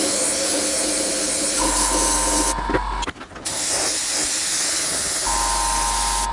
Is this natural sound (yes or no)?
yes